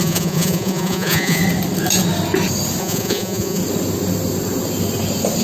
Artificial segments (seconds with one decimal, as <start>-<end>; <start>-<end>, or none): 0.0-1.4; 2.8-3.6